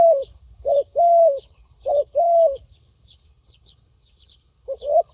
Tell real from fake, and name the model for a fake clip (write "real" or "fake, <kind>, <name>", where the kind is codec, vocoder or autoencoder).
fake, codec, HILCodec